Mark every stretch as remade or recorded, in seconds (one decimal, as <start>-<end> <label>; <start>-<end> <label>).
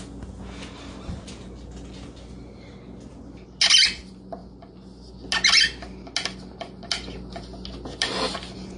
0.0-8.8 recorded